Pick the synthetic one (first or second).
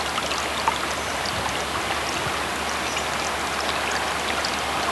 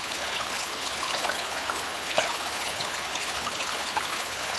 second